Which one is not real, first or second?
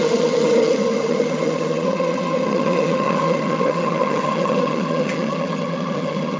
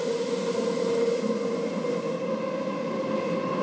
first